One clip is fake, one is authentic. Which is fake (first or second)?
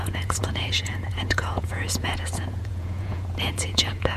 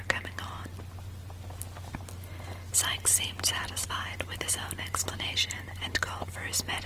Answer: first